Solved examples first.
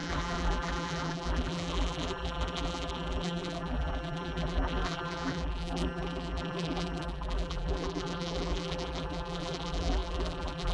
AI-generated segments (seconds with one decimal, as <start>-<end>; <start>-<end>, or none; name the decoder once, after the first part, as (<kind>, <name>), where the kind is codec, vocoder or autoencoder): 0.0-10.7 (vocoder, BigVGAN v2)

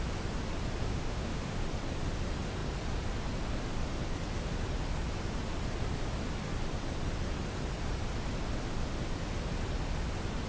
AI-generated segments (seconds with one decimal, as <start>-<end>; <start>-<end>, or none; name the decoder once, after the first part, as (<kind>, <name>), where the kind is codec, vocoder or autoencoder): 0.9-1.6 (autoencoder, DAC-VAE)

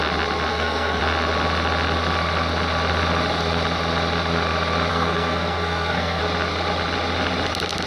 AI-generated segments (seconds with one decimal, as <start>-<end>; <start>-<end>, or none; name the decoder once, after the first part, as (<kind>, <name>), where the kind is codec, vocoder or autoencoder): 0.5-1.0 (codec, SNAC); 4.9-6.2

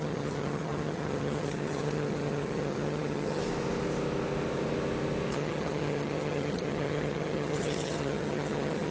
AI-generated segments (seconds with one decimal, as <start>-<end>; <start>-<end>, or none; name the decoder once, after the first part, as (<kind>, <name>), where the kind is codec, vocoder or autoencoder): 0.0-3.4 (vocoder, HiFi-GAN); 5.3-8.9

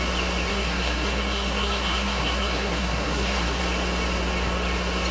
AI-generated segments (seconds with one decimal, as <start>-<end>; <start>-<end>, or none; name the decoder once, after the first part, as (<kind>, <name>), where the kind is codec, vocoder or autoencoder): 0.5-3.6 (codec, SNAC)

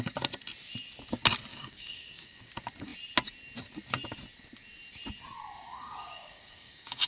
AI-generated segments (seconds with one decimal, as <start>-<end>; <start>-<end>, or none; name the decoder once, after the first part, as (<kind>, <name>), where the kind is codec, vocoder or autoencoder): 1.5-2.5 (codec, DAC); 5.7-7.1